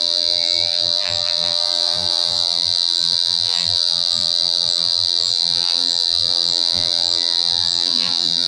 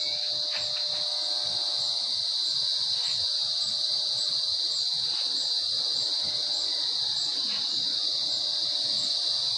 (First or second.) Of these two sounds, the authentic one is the second